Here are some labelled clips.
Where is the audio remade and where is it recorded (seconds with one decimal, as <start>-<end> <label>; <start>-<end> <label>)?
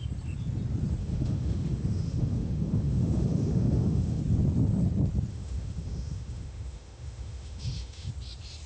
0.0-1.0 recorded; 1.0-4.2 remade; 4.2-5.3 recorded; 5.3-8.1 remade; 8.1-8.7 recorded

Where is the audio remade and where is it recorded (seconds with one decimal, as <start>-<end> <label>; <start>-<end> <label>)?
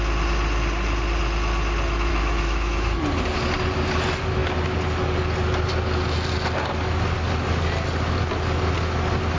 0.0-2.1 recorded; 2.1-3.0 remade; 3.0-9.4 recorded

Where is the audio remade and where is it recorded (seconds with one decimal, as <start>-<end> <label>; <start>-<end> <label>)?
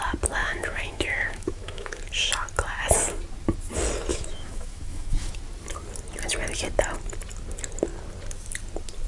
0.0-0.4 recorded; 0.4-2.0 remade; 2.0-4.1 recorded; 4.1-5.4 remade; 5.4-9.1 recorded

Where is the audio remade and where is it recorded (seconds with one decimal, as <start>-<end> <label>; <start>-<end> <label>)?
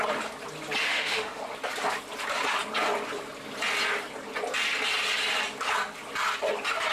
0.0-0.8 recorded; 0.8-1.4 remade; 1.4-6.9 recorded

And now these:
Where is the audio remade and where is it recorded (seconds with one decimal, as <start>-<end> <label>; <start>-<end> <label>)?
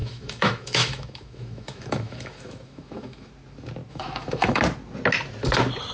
0.0-3.3 remade; 3.3-3.9 recorded; 3.9-4.6 remade; 4.6-5.9 recorded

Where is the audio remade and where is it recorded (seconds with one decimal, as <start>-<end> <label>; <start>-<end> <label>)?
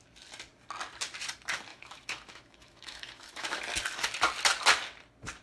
0.0-1.7 recorded; 1.7-3.6 remade; 3.6-5.4 recorded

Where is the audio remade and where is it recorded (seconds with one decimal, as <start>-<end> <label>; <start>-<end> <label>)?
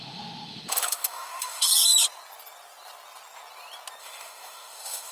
0.0-1.7 remade; 1.7-4.0 recorded; 4.0-5.1 remade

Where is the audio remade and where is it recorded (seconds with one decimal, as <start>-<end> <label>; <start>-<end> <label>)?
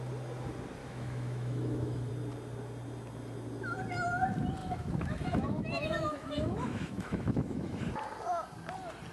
0.0-0.8 recorded; 0.8-2.1 remade; 2.1-4.6 recorded; 4.6-7.8 remade; 7.8-9.1 recorded